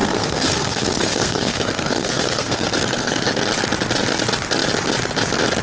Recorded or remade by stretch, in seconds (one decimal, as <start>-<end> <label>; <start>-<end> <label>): 0.0-3.4 remade; 3.4-5.6 recorded